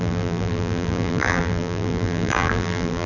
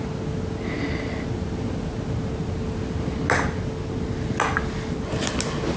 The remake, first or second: first